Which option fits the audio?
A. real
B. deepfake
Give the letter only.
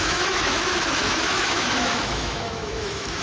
B